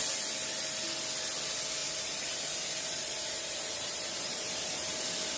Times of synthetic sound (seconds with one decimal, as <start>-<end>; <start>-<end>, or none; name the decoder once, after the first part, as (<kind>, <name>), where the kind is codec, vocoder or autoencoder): 1.8-5.0 (vocoder, BigVGAN v2)